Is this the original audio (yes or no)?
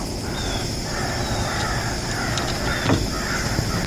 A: yes